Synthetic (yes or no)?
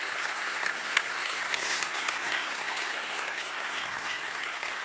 yes